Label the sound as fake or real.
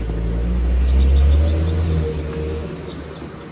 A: real